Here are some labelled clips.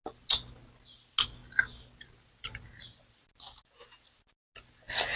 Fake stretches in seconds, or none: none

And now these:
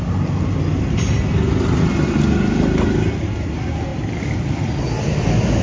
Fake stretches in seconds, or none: 3.9-5.6 (vocoder, BigVGAN v2)